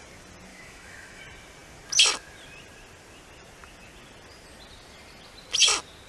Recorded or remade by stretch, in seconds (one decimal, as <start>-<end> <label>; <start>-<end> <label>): 0.0-0.5 recorded; 0.5-1.2 remade; 1.2-6.1 recorded